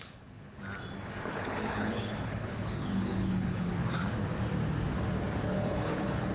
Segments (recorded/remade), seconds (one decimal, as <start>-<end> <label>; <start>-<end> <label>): 0.0-0.6 remade; 0.6-1.3 recorded; 1.3-3.7 remade; 3.7-5.5 recorded; 5.5-6.3 remade